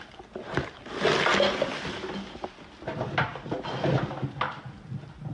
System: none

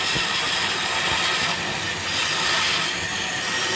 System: none